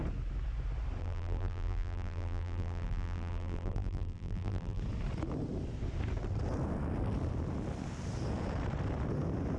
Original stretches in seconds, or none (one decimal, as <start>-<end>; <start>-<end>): 0.0-1.0; 4.8-9.6